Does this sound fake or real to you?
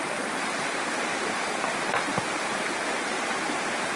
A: real